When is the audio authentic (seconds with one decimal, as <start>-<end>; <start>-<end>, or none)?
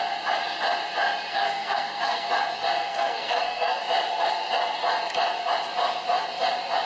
0.0-1.3; 2.3-2.8; 3.8-6.9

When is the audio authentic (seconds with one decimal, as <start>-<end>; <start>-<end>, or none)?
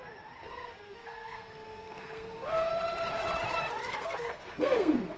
0.0-0.4; 2.7-3.8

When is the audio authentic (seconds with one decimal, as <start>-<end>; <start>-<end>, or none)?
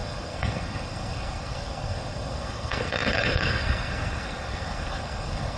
none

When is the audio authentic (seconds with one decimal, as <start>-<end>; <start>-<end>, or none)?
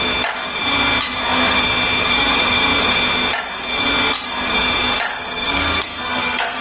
0.0-5.1